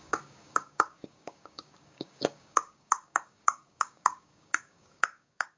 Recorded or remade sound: remade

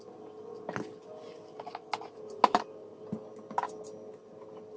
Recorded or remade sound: recorded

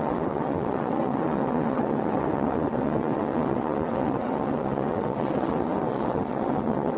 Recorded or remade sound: remade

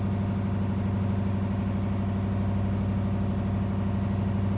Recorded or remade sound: recorded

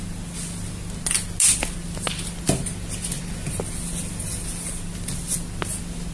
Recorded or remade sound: recorded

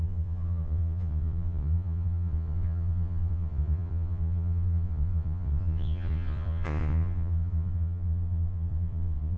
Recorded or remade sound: remade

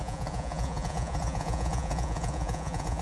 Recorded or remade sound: remade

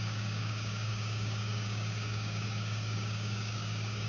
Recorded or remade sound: remade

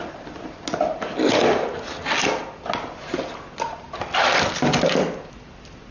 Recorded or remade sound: recorded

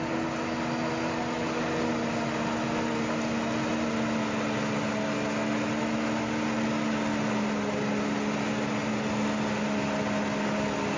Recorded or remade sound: recorded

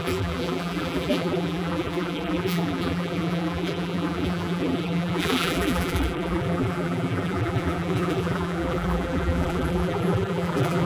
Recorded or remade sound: remade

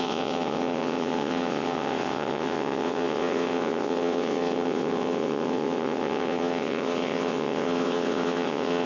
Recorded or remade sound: remade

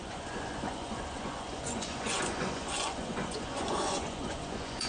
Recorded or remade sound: remade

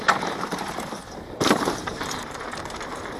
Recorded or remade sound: remade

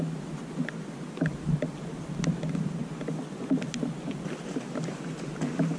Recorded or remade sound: recorded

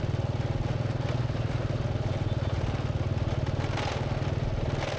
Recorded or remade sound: recorded